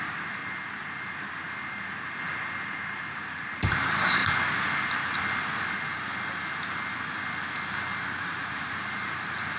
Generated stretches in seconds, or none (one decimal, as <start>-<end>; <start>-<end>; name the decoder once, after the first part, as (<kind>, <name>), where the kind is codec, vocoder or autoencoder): 0.0-0.4 (vocoder, BigVGAN v2); 1.7-4.2; 8.2-9.6